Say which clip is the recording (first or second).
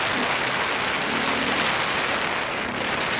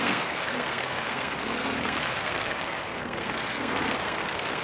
first